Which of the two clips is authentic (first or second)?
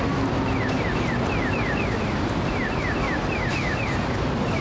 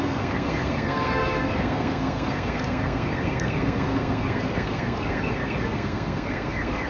first